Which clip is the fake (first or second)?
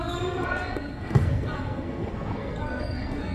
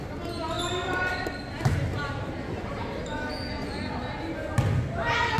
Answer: first